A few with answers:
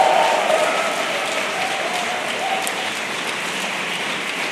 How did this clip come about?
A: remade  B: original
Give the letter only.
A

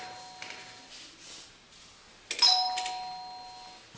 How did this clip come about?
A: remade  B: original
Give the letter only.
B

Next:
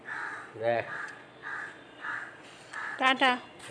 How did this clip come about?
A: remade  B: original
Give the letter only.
A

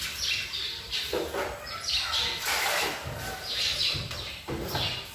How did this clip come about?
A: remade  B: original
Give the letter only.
B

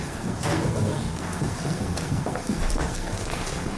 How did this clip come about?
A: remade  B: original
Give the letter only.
A